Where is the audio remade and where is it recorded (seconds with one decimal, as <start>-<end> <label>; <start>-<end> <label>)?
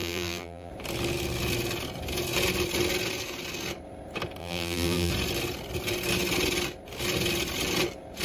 0.0-0.7 remade; 0.7-4.4 recorded; 4.4-5.1 remade; 5.1-8.2 recorded